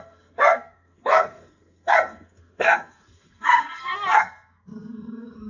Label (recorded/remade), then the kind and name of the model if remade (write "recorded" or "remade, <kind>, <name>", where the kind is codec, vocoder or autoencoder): remade, codec, SNAC